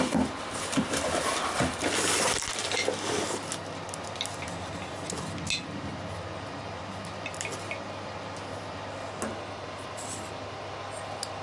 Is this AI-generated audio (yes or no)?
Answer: no